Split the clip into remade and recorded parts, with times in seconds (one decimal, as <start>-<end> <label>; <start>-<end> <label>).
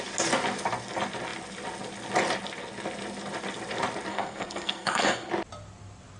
0.0-4.1 recorded; 4.1-5.3 remade; 5.3-6.2 recorded